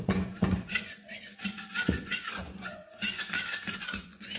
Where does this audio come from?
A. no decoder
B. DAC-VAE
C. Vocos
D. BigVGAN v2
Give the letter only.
C